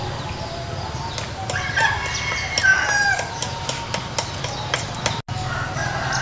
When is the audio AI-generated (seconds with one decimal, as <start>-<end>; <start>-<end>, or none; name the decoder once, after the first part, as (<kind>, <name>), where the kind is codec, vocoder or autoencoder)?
none